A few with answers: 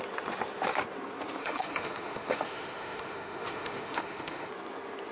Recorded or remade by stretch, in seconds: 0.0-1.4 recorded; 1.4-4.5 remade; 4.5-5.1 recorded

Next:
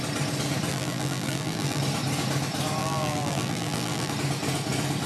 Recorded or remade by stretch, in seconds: 0.0-0.7 recorded; 0.7-1.8 remade; 1.8-2.8 recorded; 2.8-4.1 remade; 4.1-5.1 recorded

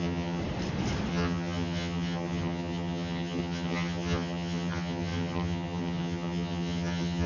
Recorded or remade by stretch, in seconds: 0.0-0.4 remade; 0.4-1.1 recorded; 1.1-7.3 remade

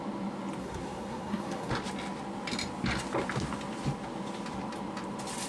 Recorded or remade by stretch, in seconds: 0.0-0.6 recorded; 0.6-1.7 remade; 1.7-5.5 recorded

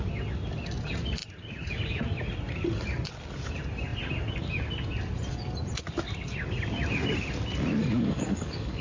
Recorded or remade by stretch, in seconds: 0.0-7.8 recorded; 7.8-8.8 remade

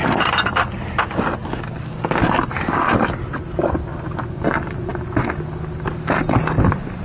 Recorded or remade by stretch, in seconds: 0.0-7.0 recorded

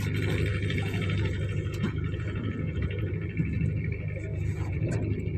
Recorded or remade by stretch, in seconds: 0.0-0.5 recorded; 0.5-3.1 remade; 3.1-4.3 recorded; 4.3-4.9 remade; 4.9-5.4 recorded